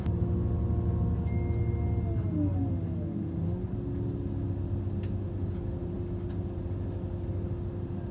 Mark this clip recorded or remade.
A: recorded